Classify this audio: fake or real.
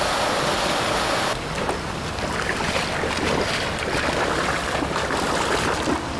real